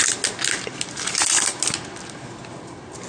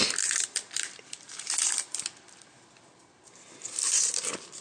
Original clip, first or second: first